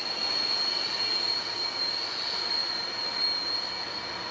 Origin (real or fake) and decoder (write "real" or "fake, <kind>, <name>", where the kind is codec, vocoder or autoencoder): real